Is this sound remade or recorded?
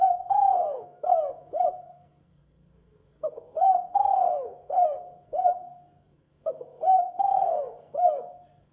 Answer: remade